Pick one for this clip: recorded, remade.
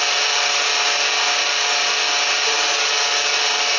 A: recorded